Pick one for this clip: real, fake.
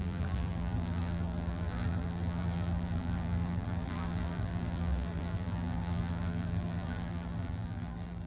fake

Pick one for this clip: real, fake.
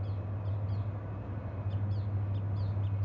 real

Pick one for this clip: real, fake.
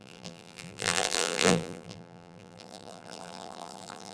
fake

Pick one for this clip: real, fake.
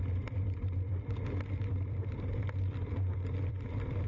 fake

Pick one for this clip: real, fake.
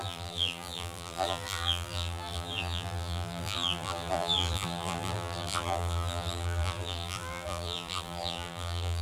fake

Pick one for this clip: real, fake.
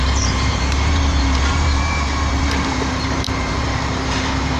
fake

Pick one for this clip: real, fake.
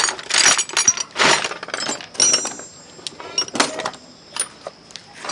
real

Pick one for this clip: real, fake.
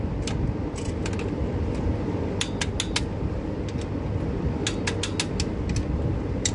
real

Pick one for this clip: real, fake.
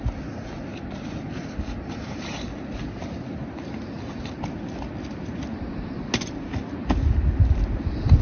real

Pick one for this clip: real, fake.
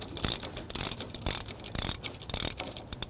real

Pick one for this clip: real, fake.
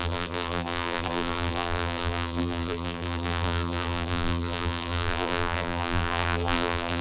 fake